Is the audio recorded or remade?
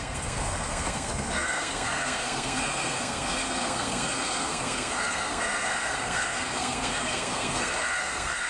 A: remade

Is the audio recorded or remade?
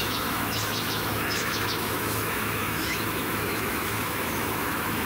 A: remade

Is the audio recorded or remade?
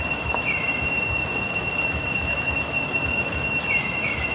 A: remade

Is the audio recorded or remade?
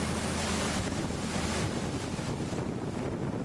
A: recorded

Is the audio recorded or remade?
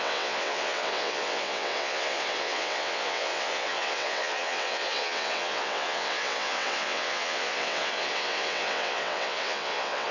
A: remade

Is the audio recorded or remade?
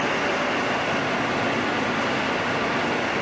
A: recorded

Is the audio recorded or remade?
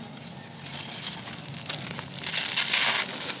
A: recorded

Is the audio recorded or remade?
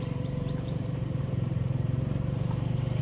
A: remade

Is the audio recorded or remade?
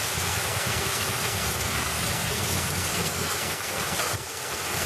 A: remade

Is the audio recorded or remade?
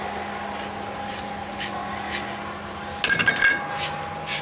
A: recorded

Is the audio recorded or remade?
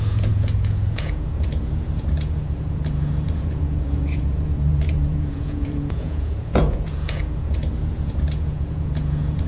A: remade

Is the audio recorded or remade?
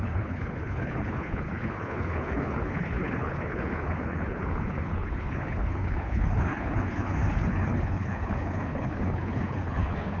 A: remade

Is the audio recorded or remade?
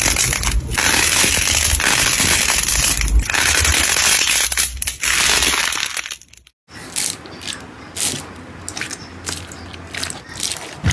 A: recorded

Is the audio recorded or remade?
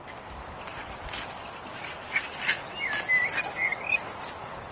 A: recorded